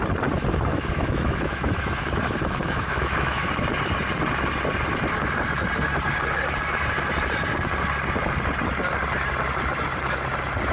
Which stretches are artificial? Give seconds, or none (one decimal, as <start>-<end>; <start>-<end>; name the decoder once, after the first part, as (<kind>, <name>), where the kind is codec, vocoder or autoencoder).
0.7-3.5 (autoencoder, DAC-VAE)